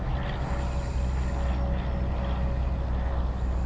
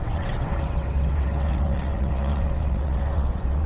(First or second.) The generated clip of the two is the second